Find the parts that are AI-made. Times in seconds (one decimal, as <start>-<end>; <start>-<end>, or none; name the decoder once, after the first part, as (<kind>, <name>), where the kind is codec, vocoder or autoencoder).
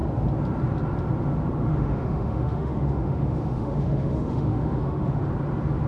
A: 1.7-5.2 (autoencoder, DAC-VAE)